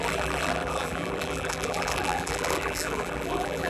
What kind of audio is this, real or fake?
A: fake